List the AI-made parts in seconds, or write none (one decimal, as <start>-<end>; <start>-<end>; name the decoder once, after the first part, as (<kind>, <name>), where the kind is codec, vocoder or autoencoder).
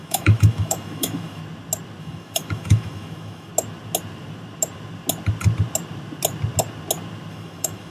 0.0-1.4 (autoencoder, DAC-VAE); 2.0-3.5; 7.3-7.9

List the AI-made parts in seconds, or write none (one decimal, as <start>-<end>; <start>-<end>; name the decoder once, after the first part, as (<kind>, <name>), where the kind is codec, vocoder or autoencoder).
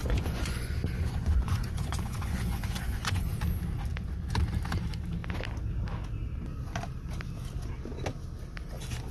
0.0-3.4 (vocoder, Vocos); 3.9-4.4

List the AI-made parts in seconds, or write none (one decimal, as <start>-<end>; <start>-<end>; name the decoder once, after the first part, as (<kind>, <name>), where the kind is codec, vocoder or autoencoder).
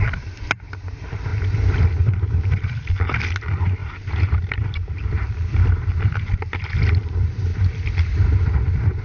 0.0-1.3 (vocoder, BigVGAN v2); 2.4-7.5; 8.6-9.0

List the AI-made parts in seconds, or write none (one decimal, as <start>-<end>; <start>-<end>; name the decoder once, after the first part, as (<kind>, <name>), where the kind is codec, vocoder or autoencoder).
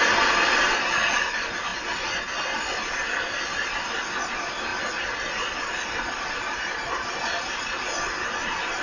none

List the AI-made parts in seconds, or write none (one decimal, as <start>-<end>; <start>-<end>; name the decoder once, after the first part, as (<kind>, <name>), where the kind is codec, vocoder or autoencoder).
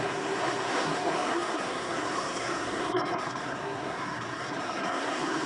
0.0-5.5 (codec, SNAC)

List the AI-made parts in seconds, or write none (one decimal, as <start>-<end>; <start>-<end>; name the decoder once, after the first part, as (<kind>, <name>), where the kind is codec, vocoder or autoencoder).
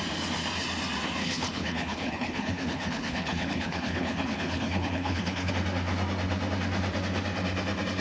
1.2-5.5 (codec, HILCodec)